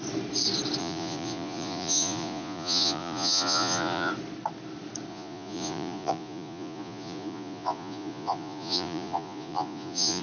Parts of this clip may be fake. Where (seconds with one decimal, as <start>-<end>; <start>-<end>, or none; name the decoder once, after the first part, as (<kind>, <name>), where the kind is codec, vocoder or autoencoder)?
0.8-4.1 (vocoder, Vocos); 5.1-10.2